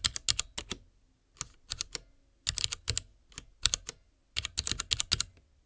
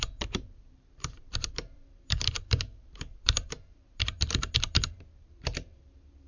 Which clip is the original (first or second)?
first